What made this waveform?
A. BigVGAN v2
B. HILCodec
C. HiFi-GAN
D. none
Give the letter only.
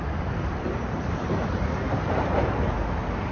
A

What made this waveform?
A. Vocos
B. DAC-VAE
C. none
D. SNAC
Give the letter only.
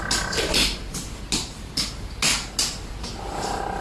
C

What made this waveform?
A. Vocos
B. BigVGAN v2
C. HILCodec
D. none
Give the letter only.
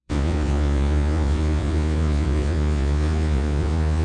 A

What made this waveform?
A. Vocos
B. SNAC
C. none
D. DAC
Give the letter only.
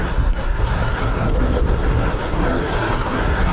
B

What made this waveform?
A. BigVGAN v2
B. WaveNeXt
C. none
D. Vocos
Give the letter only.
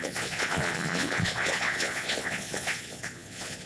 D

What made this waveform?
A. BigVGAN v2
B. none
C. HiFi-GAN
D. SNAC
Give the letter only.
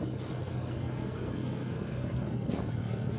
D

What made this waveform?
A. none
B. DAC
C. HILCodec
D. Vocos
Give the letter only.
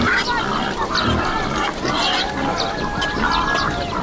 A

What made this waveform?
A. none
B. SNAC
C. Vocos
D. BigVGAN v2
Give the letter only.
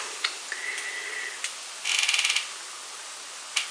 A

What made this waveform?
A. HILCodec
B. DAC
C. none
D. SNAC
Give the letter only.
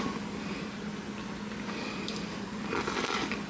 C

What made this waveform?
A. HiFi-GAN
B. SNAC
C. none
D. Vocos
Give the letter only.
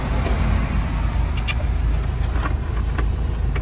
C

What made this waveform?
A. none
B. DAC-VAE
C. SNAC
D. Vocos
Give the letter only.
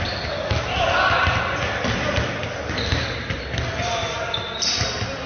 A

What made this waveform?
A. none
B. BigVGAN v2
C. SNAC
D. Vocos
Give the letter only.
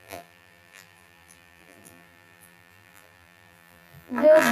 B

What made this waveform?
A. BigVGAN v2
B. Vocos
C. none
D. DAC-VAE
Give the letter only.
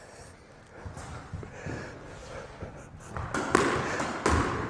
C